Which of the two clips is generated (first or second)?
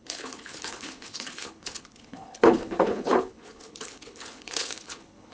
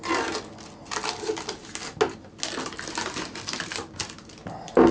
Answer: first